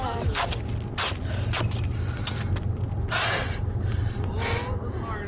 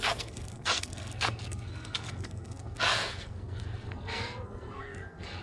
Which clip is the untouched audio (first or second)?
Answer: first